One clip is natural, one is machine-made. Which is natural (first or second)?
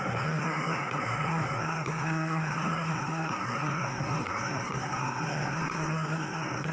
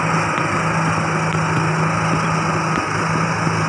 second